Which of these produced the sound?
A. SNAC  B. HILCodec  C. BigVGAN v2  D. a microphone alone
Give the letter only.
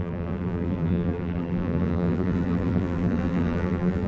C